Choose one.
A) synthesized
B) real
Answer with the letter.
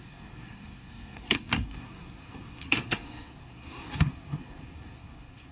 A